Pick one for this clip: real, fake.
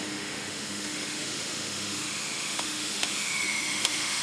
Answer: fake